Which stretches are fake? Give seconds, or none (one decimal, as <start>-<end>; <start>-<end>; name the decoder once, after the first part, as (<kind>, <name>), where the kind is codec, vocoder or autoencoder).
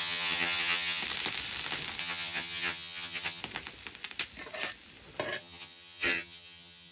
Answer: 0.0-1.0 (vocoder, HiFi-GAN); 2.0-3.4; 5.4-6.9